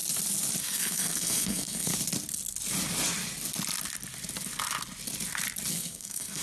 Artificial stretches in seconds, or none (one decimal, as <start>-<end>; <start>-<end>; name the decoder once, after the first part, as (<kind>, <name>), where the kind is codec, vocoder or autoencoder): 0.6-1.9 (codec, SNAC); 5.7-6.4